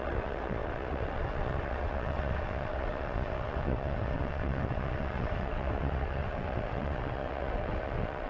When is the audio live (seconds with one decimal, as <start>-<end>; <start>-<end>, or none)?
none